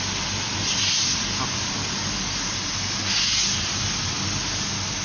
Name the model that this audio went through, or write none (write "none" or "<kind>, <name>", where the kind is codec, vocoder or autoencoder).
none